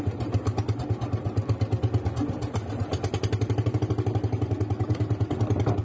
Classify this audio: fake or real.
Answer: real